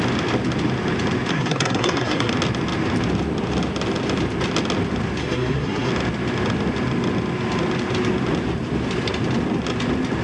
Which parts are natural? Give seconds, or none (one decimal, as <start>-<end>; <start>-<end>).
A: 0.0-1.3; 2.3-5.2; 5.9-10.2

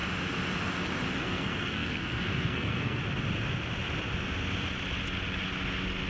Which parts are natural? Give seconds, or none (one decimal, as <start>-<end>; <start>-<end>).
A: 0.0-1.2; 3.0-6.1

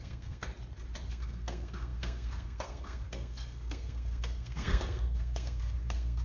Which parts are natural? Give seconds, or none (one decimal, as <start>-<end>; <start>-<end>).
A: 0.5-1.1

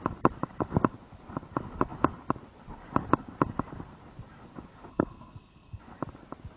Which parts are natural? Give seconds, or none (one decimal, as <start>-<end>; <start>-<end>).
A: 0.0-4.9; 5.8-6.6

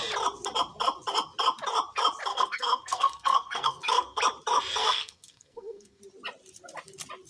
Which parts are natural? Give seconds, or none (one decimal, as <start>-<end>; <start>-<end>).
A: 0.0-2.3; 4.2-4.8; 6.0-7.3